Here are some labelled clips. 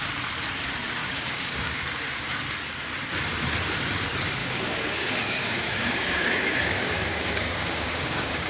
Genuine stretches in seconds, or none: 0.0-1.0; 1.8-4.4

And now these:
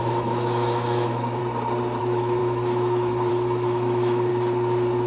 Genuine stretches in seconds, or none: 1.4-2.0; 4.3-5.1

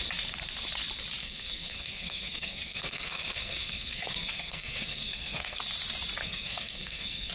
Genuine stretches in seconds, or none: 0.0-1.2; 5.6-6.2

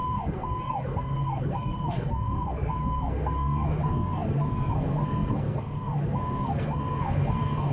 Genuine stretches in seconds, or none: none

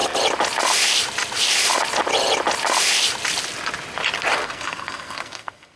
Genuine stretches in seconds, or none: 0.0-4.4

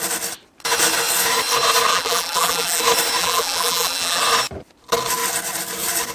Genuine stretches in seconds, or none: 0.0-1.9; 2.8-3.2; 4.2-6.1